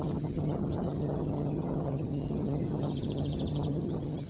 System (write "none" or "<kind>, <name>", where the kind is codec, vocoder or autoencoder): vocoder, HiFi-GAN